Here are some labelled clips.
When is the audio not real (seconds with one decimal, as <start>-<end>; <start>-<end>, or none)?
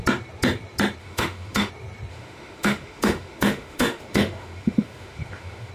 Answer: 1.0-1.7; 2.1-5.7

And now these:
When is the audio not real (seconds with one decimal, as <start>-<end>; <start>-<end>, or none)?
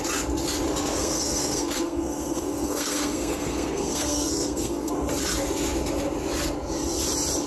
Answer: 1.0-4.9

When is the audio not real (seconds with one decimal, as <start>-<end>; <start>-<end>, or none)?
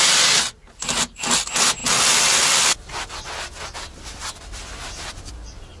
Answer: 0.6-1.2; 1.8-5.3